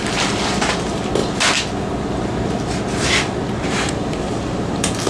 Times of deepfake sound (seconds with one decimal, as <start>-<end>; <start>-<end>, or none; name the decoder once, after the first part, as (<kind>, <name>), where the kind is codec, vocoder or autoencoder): 0.0-1.2 (vocoder, BigVGAN v2); 3.6-5.1